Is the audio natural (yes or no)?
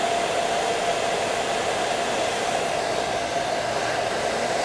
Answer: yes